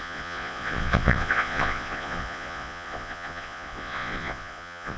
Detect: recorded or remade remade